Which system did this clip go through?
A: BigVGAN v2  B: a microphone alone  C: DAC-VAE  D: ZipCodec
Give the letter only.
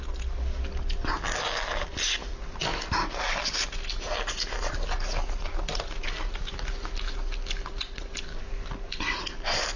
B